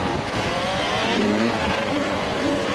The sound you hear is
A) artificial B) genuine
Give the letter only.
A